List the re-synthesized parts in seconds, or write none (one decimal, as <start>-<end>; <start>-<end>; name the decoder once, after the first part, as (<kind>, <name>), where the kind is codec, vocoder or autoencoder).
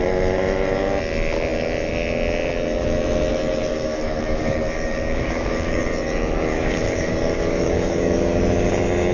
3.7-5.8 (codec, DAC); 6.5-8.4